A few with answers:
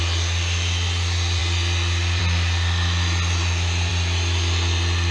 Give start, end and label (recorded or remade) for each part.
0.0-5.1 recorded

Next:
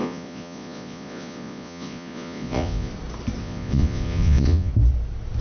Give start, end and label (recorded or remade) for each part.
0.0-2.9 remade; 2.9-3.4 recorded; 3.4-4.7 remade; 4.7-5.4 recorded

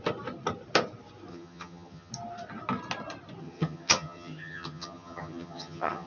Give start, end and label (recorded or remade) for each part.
0.0-1.3 recorded; 1.3-2.1 remade; 2.1-3.4 recorded; 3.4-6.1 remade